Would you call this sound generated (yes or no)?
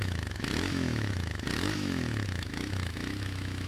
yes